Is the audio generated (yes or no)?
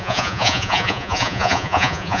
yes